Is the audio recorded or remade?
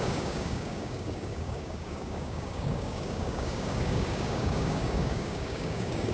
remade